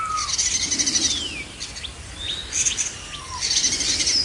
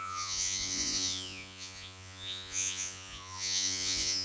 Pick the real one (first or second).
first